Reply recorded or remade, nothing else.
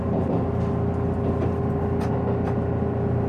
recorded